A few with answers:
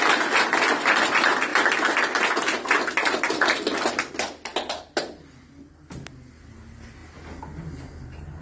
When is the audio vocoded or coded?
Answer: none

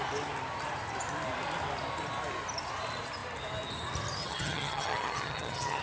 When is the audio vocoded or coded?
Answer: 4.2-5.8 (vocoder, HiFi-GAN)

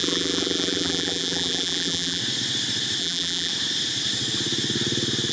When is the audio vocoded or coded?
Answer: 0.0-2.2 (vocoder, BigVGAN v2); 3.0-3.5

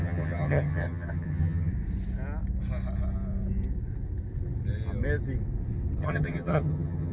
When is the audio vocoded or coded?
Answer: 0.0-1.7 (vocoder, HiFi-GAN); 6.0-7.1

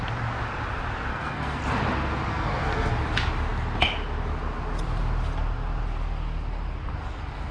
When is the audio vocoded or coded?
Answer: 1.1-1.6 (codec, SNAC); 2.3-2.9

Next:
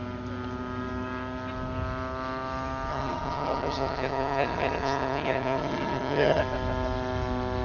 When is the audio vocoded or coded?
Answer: 2.9-6.4 (vocoder, HiFi-GAN)